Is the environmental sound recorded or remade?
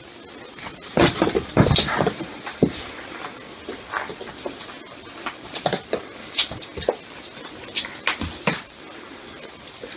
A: recorded